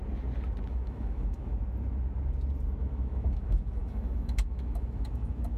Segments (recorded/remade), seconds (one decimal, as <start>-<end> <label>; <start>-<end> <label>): 0.0-0.7 recorded; 0.7-1.5 remade; 1.5-2.8 recorded; 2.8-5.6 remade

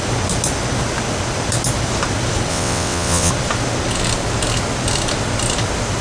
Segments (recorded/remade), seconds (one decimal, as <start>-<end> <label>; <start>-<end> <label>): 0.0-2.5 recorded; 2.5-3.3 remade; 3.3-6.0 recorded

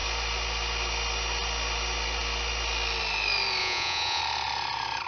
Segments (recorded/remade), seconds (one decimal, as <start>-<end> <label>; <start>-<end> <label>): 0.0-3.6 recorded; 3.6-4.2 remade; 4.2-5.1 recorded

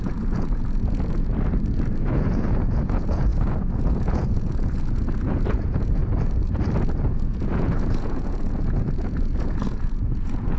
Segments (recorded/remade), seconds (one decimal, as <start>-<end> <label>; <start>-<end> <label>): 0.0-1.3 remade; 1.3-2.0 recorded; 2.0-6.0 remade; 6.0-7.0 recorded; 7.0-10.6 remade

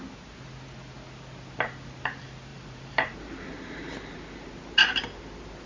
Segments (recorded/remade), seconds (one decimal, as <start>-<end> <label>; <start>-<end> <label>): 0.0-2.5 recorded; 2.5-4.5 remade; 4.5-5.7 recorded

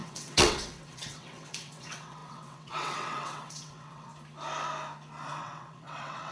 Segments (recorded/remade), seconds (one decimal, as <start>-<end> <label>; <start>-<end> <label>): 0.0-4.1 remade; 4.1-5.4 recorded; 5.4-6.3 remade